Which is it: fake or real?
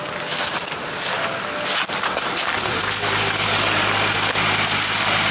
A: real